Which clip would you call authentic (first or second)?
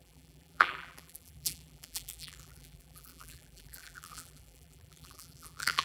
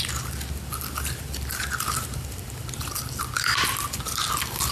second